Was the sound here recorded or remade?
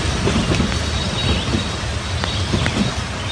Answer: recorded